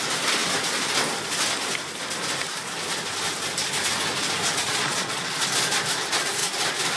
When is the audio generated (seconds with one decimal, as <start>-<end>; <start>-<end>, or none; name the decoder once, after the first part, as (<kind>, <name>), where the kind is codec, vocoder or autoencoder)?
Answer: 4.6-5.2 (vocoder, Vocos)